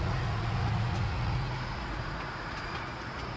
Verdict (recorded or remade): remade